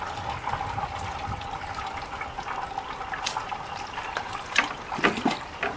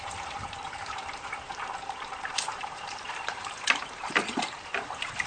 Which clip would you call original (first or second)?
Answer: first